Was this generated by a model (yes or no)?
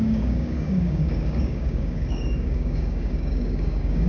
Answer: yes